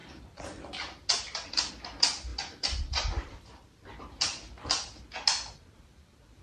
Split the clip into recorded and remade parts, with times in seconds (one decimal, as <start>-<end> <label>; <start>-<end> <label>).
0.0-6.4 recorded